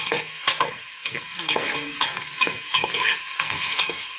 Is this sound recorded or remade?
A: remade